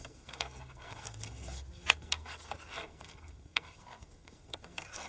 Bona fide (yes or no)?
no